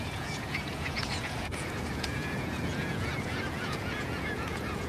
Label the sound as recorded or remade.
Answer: remade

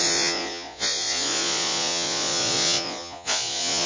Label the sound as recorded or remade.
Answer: remade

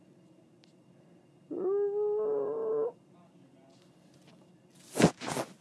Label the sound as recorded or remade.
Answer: recorded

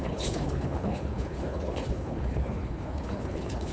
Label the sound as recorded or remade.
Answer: remade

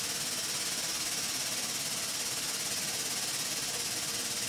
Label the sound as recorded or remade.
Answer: recorded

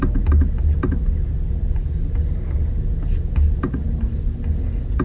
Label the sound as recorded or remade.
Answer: recorded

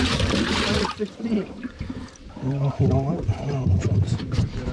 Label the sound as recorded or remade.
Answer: remade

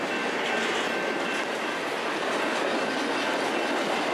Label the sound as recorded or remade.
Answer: recorded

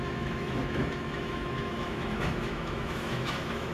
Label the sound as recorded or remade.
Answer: remade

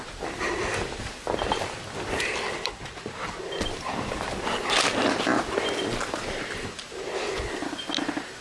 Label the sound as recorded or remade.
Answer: recorded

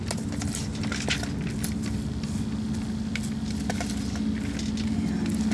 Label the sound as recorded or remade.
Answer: recorded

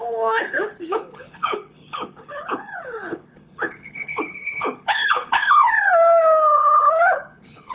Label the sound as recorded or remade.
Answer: remade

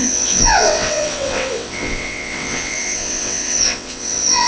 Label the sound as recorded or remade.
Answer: remade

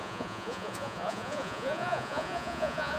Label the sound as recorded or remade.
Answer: remade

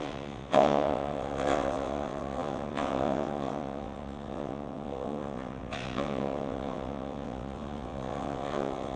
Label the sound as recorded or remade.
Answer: remade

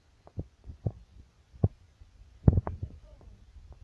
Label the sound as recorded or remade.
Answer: remade